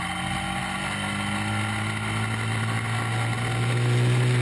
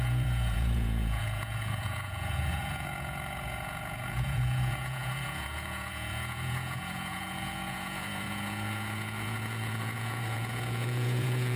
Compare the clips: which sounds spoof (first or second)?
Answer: second